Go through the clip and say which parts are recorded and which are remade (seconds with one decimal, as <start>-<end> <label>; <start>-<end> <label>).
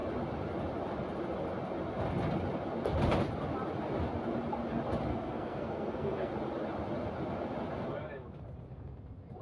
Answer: 0.0-5.1 recorded; 5.1-6.3 remade; 6.3-9.4 recorded